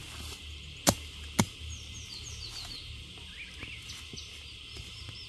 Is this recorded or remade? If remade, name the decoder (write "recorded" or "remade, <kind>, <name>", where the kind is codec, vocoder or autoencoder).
recorded